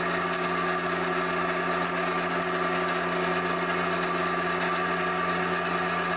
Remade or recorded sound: recorded